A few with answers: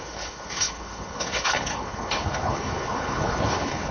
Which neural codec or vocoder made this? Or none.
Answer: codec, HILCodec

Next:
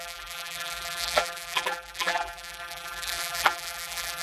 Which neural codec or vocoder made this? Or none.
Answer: vocoder, BigVGAN v2